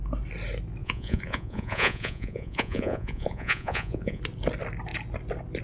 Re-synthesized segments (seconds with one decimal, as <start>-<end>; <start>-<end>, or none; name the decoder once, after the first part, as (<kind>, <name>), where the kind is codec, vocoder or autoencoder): 0.8-4.2 (vocoder, Vocos)